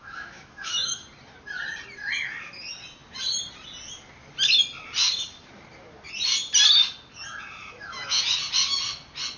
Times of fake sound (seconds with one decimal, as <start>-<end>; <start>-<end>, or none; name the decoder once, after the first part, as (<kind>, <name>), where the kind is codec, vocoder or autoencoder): 0.0-1.0 (autoencoder, DAC-VAE); 7.6-8.2